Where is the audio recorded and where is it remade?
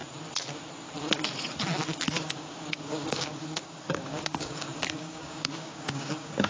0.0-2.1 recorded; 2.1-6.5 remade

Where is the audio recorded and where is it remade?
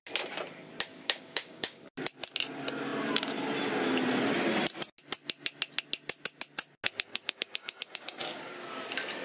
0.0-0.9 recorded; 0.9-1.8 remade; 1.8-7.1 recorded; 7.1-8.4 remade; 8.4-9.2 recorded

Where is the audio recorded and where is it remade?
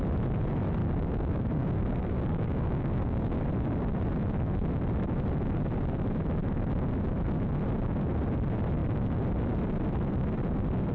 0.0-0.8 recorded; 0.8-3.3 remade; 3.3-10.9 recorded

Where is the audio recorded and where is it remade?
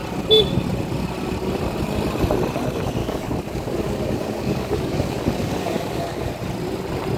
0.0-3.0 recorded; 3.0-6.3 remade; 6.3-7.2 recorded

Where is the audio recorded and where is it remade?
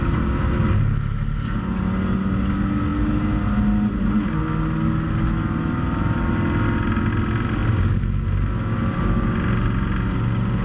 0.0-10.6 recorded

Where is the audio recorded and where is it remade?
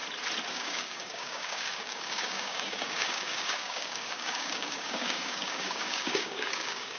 0.0-0.5 recorded; 0.5-7.0 remade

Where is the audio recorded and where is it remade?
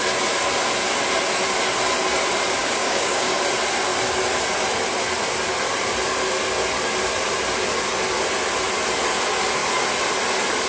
0.0-2.6 recorded; 2.6-3.4 remade; 3.4-10.7 recorded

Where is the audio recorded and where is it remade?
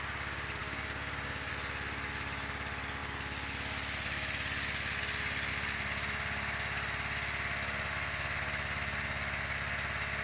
0.0-0.6 recorded; 0.6-1.5 remade; 1.5-10.2 recorded